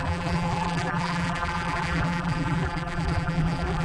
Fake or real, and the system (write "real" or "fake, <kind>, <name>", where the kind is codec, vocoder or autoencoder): fake, vocoder, BigVGAN v2